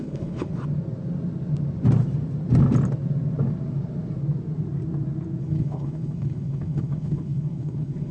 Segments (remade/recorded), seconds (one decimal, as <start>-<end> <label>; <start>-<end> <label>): 0.0-0.5 remade; 0.5-5.4 recorded; 5.4-8.1 remade

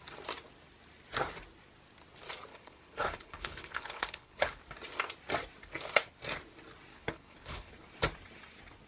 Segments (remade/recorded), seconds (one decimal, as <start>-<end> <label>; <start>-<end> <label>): 0.0-2.5 recorded; 2.5-4.6 remade; 4.6-6.9 recorded; 6.9-7.7 remade; 7.7-8.9 recorded